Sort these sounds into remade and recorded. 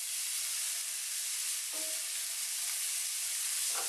recorded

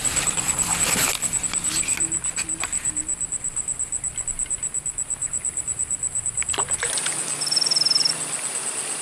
recorded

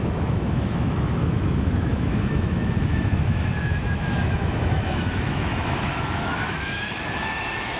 remade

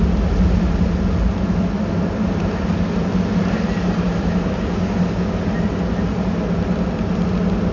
recorded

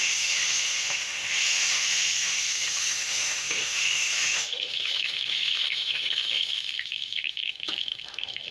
remade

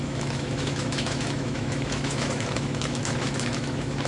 remade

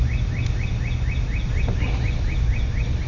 recorded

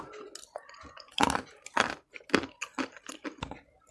recorded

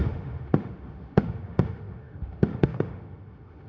remade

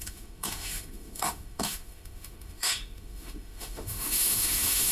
remade